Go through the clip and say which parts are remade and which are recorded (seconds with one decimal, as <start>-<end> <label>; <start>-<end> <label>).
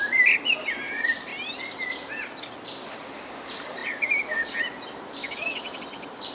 0.0-5.2 recorded; 5.2-5.8 remade; 5.8-6.3 recorded